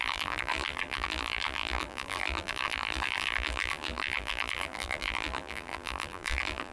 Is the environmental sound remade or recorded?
remade